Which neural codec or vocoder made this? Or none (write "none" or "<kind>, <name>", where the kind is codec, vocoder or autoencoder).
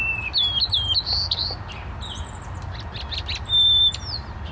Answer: none